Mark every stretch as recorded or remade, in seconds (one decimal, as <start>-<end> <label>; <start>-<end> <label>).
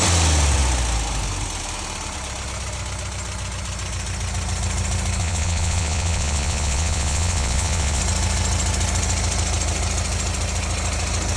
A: 0.0-5.2 recorded; 5.2-8.0 remade; 8.0-11.4 recorded